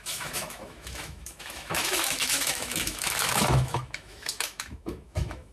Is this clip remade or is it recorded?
remade